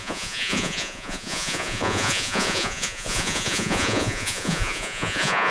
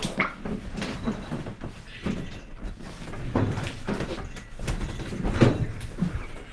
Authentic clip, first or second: second